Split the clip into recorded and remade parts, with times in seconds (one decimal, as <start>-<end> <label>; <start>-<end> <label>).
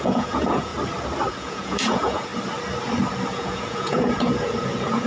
0.0-0.7 remade; 0.7-1.3 recorded; 1.3-2.3 remade; 2.3-3.3 recorded; 3.3-5.1 remade